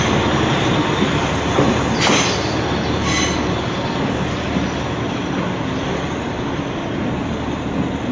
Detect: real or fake real